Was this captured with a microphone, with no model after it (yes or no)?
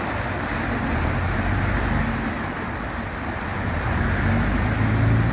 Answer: yes